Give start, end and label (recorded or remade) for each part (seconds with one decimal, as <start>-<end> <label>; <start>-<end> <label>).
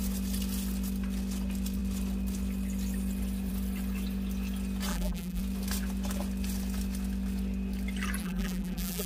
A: 0.0-4.9 recorded; 4.9-5.4 remade; 5.4-8.2 recorded; 8.2-9.1 remade